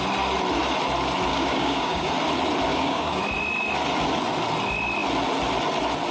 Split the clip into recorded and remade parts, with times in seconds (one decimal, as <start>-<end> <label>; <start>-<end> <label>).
0.0-1.3 recorded; 1.3-2.1 remade; 2.1-2.7 recorded; 2.7-3.2 remade; 3.2-6.1 recorded